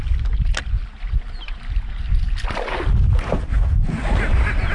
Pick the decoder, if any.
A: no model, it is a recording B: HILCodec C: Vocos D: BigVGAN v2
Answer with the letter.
A